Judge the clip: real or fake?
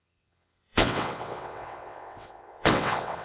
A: fake